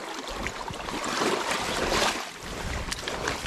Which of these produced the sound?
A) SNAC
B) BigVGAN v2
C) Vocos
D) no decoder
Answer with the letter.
D